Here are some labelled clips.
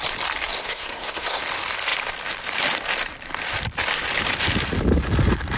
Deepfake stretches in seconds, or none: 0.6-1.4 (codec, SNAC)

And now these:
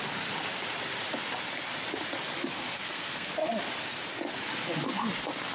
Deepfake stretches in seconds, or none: 2.6-3.3 (codec, SNAC)

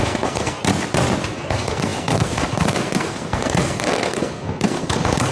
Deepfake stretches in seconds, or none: 0.0-0.7 (codec, SNAC); 1.2-5.3